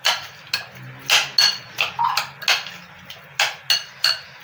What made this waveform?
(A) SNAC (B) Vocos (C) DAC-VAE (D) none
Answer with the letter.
D